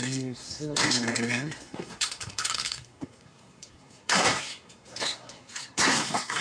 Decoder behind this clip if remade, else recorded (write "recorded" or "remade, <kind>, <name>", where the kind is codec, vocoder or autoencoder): remade, codec, SNAC